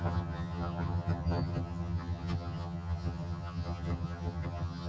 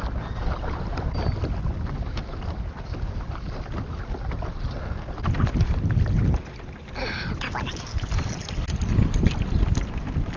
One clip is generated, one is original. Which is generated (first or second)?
first